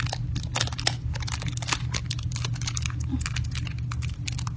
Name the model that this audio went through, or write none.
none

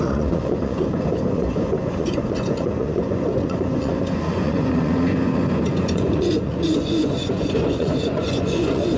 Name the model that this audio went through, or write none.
vocoder, Vocos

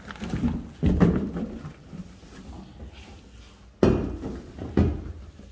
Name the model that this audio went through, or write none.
none